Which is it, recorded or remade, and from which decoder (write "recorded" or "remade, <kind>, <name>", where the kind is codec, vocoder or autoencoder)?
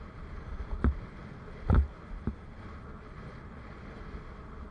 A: recorded